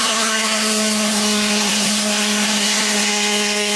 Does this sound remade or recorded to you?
remade